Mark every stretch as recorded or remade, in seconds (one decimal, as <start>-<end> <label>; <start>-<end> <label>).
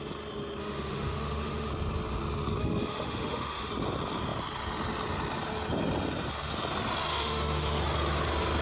0.0-0.6 recorded; 0.6-1.7 remade; 1.7-2.6 recorded; 2.6-3.7 remade; 3.7-7.1 recorded; 7.1-7.8 remade; 7.8-8.6 recorded